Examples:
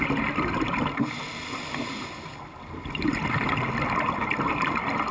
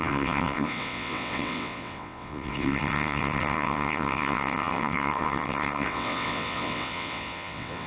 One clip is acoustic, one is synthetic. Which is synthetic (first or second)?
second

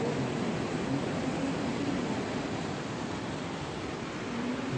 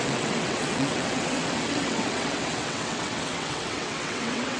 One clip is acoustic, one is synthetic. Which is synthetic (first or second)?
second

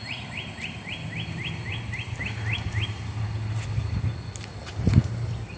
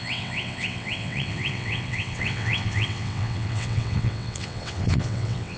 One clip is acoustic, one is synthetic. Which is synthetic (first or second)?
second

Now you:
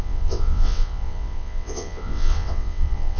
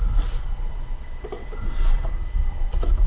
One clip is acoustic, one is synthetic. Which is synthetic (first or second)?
first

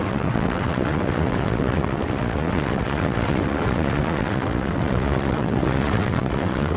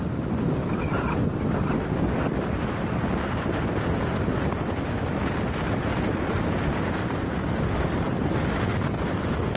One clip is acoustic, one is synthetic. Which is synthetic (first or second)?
first